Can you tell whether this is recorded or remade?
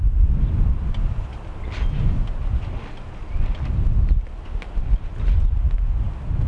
recorded